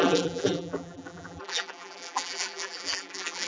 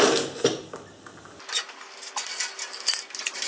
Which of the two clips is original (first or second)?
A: second